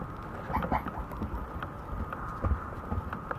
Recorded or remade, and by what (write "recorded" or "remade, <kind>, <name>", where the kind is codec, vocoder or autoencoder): recorded